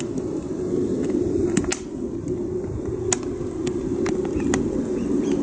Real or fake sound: real